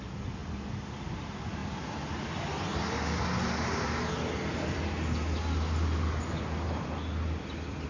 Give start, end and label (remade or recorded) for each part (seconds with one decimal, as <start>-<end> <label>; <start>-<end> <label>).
0.0-7.9 recorded